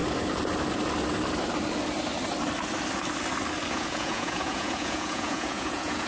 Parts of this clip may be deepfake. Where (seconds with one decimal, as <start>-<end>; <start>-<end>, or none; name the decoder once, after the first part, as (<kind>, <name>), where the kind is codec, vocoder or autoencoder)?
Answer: 3.7-6.1 (vocoder, Vocos)